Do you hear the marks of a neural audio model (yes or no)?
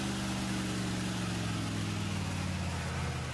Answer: no